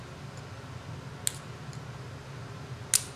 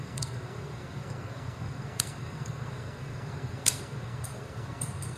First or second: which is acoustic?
first